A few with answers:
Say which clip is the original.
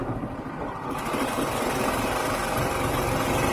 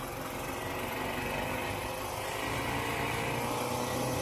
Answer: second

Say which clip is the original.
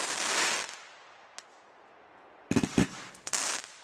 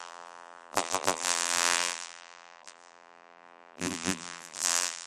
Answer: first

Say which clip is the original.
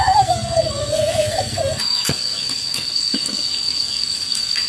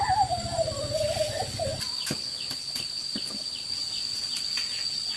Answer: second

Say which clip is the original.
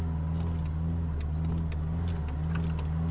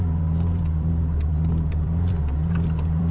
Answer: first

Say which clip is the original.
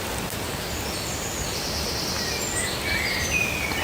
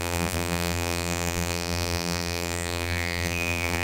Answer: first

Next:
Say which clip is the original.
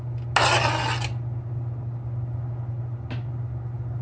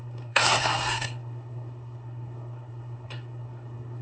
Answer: first